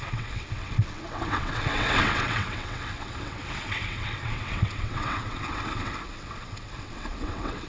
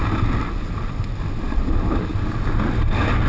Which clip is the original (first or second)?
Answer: second